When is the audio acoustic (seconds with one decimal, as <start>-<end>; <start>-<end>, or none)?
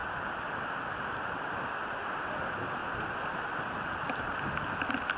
1.7-2.8; 4.4-5.2